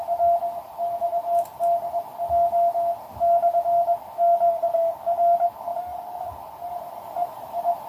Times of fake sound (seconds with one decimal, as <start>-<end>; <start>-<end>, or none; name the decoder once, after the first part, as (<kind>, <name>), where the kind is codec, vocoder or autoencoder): none